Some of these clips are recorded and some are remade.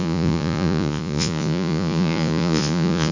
remade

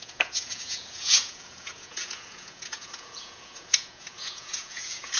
remade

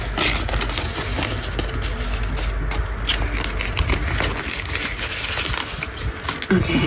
recorded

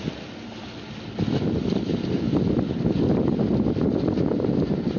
recorded